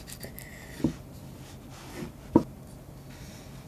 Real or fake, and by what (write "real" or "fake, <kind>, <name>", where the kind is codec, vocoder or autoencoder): real